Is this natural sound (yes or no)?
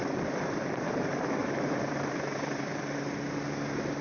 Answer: yes